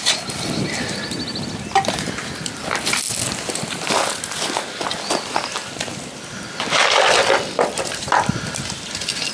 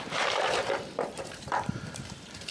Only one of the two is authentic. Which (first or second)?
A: first